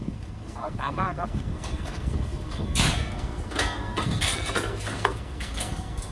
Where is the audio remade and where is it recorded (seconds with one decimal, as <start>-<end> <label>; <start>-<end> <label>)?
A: 0.0-6.1 remade